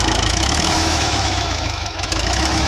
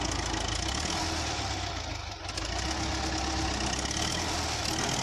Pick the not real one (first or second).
first